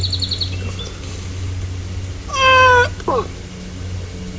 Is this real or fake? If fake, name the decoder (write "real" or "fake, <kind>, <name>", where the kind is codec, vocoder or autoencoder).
real